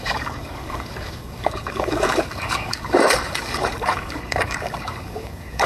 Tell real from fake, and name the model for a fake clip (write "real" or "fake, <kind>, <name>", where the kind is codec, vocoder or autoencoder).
fake, codec, DAC